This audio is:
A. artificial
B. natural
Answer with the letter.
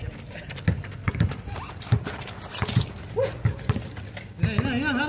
B